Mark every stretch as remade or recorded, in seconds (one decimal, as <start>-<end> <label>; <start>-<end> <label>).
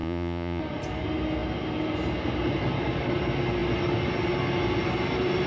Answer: 0.0-0.6 remade; 0.6-5.5 recorded